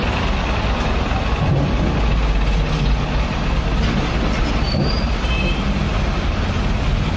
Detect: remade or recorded recorded